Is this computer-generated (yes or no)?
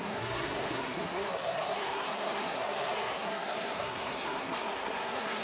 yes